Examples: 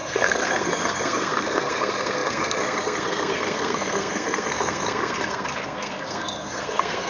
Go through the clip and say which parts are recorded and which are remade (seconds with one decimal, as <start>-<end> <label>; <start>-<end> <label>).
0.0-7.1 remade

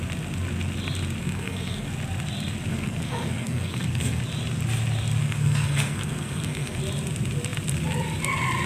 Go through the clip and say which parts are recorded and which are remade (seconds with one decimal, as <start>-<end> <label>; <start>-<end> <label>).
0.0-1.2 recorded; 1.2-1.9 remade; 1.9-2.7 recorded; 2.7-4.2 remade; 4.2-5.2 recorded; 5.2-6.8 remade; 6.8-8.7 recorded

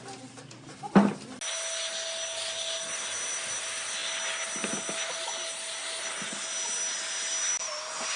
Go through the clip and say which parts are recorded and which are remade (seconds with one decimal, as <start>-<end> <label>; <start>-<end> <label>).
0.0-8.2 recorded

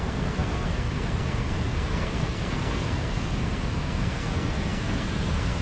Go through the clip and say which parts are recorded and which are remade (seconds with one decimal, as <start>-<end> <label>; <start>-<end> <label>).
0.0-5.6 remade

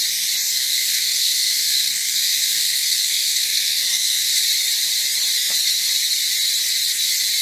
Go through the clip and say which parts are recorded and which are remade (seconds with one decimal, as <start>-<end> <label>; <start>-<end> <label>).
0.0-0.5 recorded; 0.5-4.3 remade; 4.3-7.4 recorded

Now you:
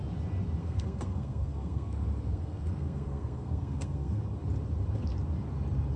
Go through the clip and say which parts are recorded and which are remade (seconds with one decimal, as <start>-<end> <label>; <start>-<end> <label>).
0.0-0.6 recorded; 0.6-4.2 remade; 4.2-6.0 recorded

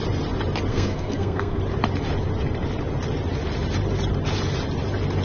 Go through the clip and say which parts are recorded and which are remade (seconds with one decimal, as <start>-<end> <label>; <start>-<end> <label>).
0.0-0.7 recorded; 0.7-1.6 remade; 1.6-5.2 recorded

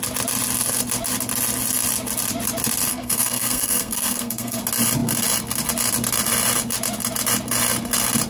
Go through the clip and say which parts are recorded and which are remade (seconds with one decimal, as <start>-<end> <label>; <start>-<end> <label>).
0.0-2.9 recorded; 2.9-4.6 remade; 4.6-8.3 recorded